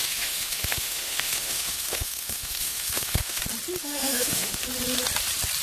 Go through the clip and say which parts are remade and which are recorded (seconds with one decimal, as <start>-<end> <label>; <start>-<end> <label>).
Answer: 0.0-3.4 remade; 3.4-3.8 recorded; 3.8-4.6 remade; 4.6-5.6 recorded